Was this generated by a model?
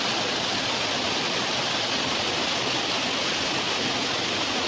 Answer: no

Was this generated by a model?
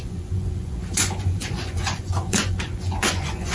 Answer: yes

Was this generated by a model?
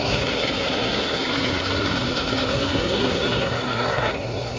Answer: yes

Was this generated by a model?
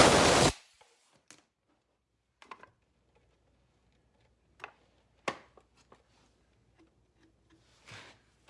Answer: no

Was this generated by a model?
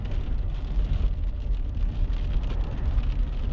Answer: no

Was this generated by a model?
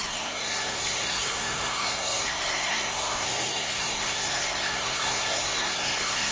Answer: yes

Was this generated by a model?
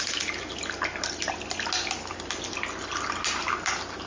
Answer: no